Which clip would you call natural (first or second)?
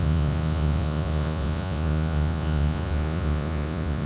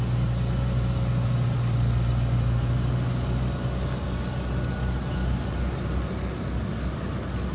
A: second